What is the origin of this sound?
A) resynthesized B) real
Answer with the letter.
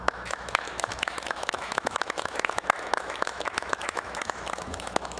A